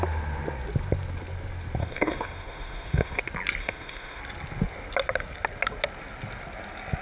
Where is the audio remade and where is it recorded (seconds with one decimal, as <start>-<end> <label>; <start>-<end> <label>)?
0.0-1.8 recorded; 1.8-3.2 remade; 3.2-3.6 recorded; 3.6-4.2 remade; 4.2-7.0 recorded